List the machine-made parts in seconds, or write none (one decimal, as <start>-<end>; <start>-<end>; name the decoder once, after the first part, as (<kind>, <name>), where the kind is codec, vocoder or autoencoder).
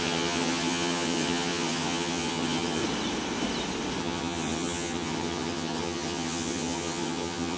0.0-2.8 (vocoder, HiFi-GAN); 4.0-7.6